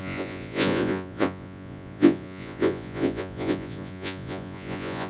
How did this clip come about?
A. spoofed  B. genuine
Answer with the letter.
A